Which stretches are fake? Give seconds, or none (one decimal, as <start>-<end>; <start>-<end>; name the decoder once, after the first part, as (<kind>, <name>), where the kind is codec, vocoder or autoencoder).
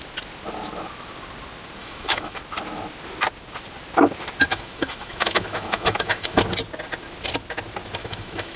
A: 1.8-2.4 (autoencoder, DAC-VAE); 4.5-6.4; 8.0-8.6